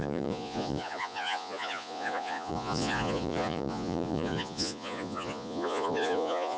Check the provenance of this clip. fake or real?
fake